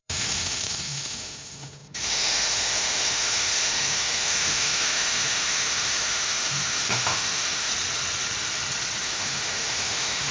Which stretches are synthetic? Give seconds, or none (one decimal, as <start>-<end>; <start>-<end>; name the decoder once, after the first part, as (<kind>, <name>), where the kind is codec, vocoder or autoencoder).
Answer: 0.0-7.7 (autoencoder, DAC-VAE); 9.0-10.3